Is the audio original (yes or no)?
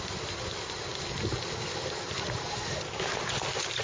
yes